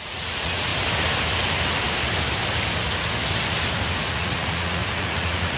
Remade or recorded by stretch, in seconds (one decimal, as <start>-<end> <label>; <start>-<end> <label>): 0.0-0.7 remade; 0.7-4.1 recorded; 4.1-5.6 remade